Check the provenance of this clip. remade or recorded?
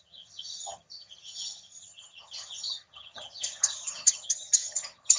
remade